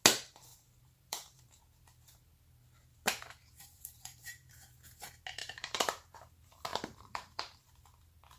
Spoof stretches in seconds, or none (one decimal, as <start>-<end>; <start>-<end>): 0.5-1.6; 2.9-4.5; 5.4-6.1; 6.7-7.6